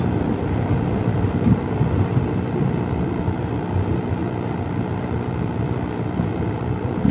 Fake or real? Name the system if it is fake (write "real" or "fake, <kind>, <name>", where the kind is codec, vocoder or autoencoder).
real